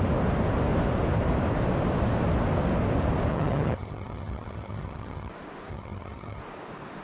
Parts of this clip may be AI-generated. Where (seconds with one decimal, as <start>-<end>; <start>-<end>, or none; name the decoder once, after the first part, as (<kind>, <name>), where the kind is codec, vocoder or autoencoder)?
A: 3.3-5.3 (vocoder, HiFi-GAN); 5.7-6.4